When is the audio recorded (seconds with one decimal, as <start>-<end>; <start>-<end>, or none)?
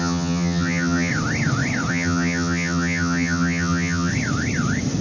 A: 1.1-1.9; 4.1-5.0